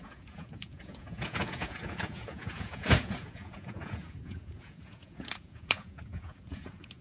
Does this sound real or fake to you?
fake